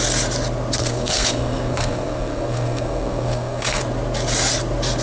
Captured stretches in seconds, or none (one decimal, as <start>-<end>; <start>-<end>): 0.0-0.8; 3.8-5.0